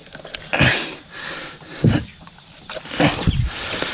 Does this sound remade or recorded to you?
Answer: recorded